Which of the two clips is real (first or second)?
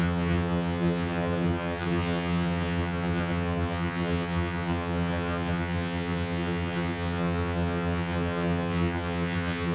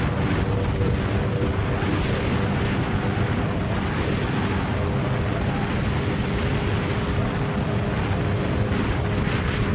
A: second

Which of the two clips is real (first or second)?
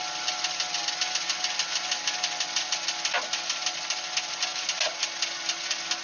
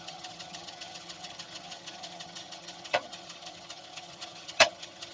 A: first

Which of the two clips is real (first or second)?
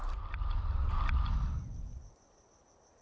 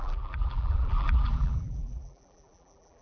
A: first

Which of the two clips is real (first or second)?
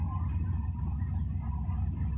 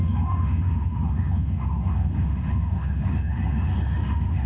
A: first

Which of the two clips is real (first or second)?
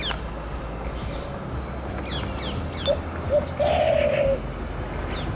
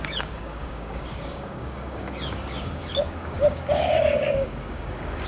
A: first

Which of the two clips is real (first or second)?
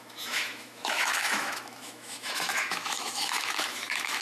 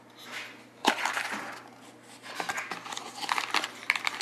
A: second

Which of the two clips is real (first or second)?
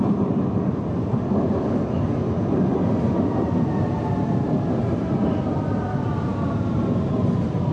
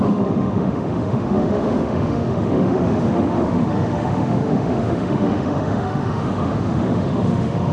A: first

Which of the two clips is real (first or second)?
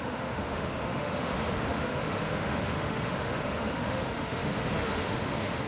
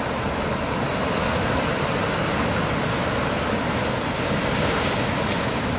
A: second